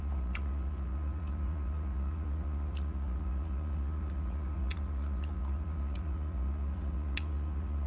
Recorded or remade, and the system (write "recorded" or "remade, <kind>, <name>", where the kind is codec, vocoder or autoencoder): remade, vocoder, Vocos